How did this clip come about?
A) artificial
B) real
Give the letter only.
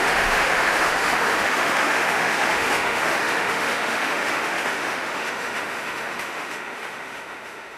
A